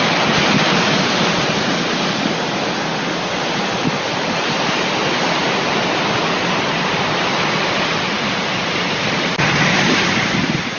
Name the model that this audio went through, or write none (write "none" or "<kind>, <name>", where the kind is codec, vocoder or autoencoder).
none